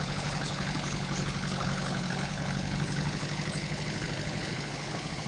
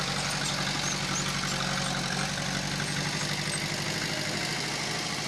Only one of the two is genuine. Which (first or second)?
second